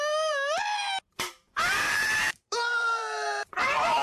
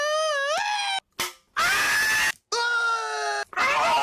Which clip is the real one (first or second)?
second